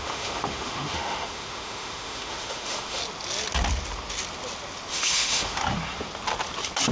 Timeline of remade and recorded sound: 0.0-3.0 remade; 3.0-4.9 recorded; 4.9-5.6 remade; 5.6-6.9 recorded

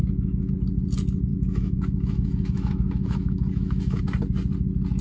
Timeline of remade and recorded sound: 0.0-0.5 remade; 0.5-1.3 recorded; 1.3-4.0 remade; 4.0-5.0 recorded

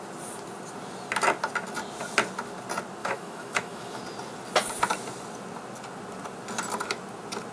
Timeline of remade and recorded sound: 0.0-3.0 recorded; 3.0-4.0 remade; 4.0-7.5 recorded

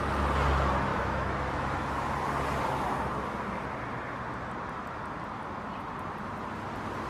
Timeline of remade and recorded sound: 0.0-0.9 recorded; 0.9-2.1 remade; 2.1-7.1 recorded

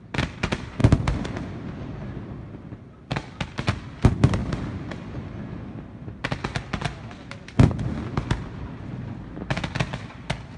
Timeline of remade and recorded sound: 0.0-10.6 recorded